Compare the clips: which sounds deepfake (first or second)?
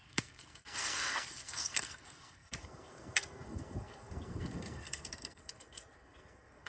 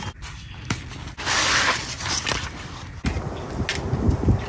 first